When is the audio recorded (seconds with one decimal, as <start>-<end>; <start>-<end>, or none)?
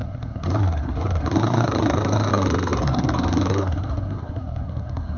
none